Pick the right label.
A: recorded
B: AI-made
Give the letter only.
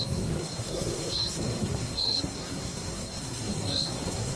B